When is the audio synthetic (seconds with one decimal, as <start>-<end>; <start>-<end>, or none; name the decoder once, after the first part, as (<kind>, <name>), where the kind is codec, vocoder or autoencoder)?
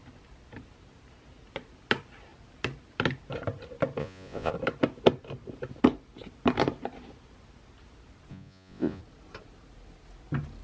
4.0-4.5 (vocoder, Vocos); 8.3-9.0